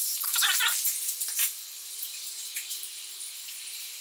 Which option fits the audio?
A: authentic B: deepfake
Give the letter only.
B